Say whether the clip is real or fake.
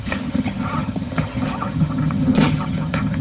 fake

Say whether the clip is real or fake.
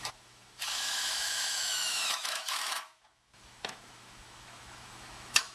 fake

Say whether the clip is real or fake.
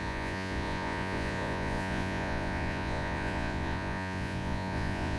fake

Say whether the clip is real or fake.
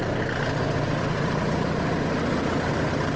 real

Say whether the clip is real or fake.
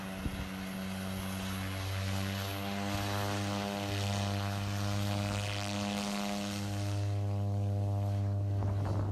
real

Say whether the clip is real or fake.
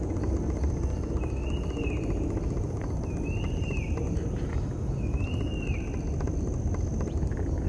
real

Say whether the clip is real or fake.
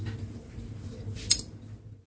real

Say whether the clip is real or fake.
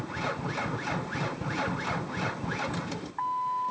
real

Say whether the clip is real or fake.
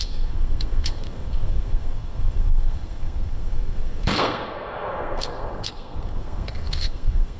fake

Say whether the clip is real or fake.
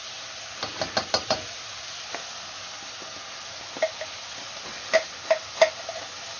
real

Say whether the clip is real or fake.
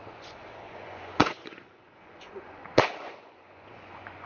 fake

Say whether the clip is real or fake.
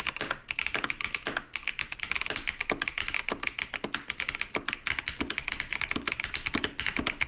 real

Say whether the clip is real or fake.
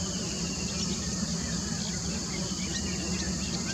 real